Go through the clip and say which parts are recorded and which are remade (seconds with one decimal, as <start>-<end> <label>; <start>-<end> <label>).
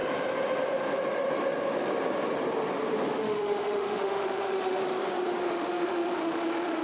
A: 0.0-3.2 recorded; 3.2-4.8 remade; 4.8-5.4 recorded; 5.4-6.8 remade